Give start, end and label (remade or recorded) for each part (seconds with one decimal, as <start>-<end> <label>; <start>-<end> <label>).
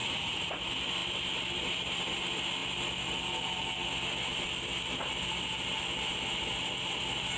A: 0.0-0.6 remade; 0.6-7.4 recorded